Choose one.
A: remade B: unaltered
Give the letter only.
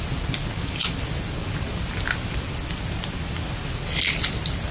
A